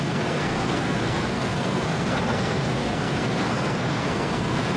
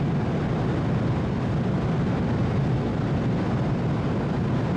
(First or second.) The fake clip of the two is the first